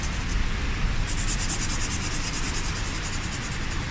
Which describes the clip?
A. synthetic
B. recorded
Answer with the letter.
B